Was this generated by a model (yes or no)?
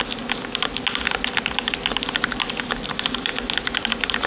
no